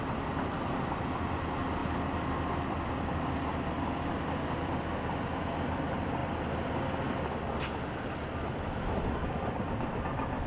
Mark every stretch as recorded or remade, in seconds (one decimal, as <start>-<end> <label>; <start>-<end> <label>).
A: 0.0-10.5 recorded